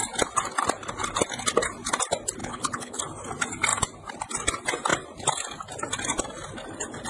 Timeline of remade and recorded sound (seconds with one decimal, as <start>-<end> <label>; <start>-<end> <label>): 0.0-2.4 recorded; 2.4-3.0 remade; 3.0-7.1 recorded